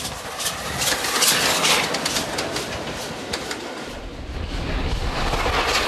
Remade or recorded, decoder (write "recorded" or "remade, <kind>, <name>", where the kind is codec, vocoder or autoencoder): recorded